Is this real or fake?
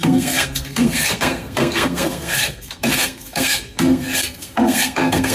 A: fake